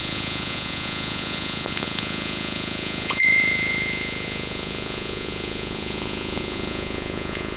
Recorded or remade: remade